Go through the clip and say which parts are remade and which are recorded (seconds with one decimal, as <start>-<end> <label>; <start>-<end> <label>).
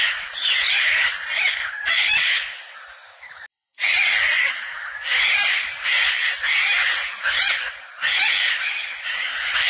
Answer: 0.0-9.7 recorded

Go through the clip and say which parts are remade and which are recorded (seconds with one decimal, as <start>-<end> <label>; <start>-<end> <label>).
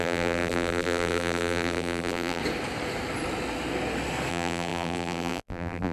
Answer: 0.0-2.4 remade; 2.4-4.3 recorded; 4.3-5.9 remade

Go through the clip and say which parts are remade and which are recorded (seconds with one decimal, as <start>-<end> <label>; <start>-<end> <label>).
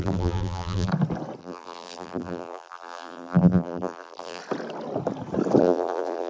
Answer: 0.0-0.9 remade; 0.9-1.4 recorded; 1.4-4.4 remade; 4.4-5.6 recorded; 5.6-6.3 remade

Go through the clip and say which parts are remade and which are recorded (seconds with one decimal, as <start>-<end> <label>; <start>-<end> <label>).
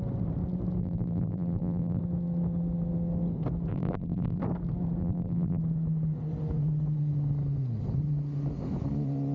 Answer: 0.0-0.8 recorded; 0.8-2.0 remade; 2.0-3.7 recorded; 3.7-4.4 remade; 4.4-5.0 recorded; 5.0-5.6 remade; 5.6-9.3 recorded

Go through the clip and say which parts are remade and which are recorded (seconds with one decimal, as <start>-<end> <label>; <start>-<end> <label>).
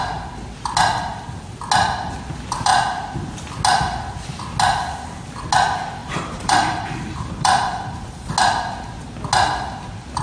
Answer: 0.0-6.0 recorded; 6.0-8.3 remade; 8.3-10.2 recorded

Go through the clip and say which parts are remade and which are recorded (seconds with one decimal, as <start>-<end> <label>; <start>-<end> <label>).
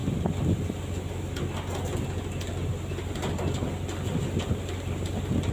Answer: 0.0-5.5 recorded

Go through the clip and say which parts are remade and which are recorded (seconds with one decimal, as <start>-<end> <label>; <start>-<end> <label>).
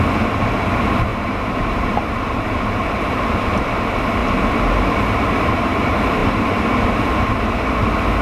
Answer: 0.0-1.1 recorded; 1.1-3.5 remade; 3.5-4.2 recorded; 4.2-5.0 remade; 5.0-8.2 recorded